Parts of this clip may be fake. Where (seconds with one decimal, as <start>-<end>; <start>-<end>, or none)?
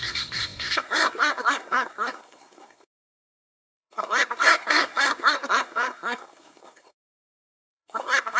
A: 0.0-8.4